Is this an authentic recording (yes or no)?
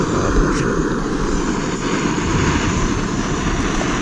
yes